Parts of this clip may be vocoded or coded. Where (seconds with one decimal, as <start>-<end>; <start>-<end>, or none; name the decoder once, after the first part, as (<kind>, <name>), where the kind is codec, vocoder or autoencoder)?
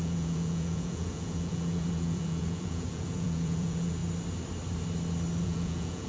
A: 0.0-4.0 (vocoder, Vocos); 5.4-6.1